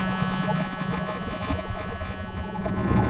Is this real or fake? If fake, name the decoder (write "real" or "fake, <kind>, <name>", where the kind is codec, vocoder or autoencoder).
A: fake, vocoder, Vocos